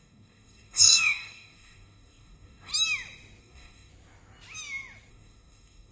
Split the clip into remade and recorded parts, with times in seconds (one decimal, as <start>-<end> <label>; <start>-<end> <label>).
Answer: 0.0-2.7 remade; 2.7-3.4 recorded; 3.4-3.9 remade; 3.9-5.1 recorded; 5.1-5.9 remade